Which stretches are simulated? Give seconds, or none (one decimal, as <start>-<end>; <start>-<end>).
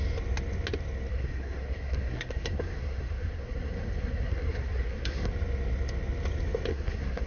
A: 1.1-5.3; 6.7-7.3